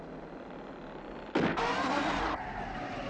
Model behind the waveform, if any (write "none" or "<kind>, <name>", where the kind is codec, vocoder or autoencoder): none